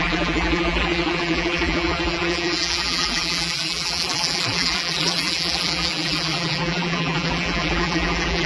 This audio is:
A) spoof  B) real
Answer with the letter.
A